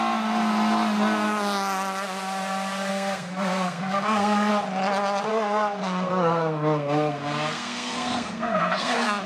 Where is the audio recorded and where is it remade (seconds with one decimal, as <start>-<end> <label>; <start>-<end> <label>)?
0.0-2.9 recorded; 2.9-4.5 remade; 4.5-5.3 recorded; 5.3-9.3 remade